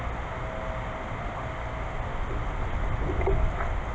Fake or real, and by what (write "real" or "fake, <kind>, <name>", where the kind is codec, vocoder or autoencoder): real